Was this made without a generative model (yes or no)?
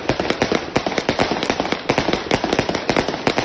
no